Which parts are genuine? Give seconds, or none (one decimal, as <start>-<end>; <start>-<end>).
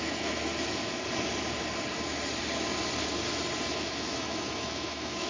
0.5-3.7